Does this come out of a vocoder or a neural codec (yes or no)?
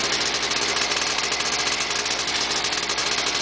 no